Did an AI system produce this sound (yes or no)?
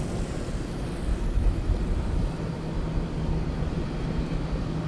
no